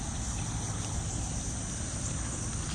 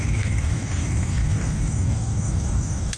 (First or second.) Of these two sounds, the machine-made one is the second